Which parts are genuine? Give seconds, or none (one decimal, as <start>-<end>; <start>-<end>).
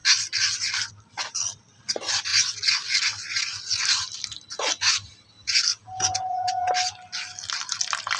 0.0-5.7; 6.7-8.2